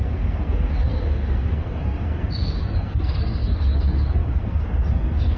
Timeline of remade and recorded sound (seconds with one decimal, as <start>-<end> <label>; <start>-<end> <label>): 0.0-5.4 remade